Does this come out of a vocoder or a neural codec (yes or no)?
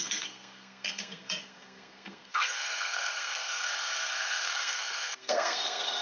yes